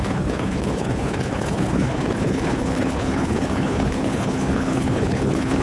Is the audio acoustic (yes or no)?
no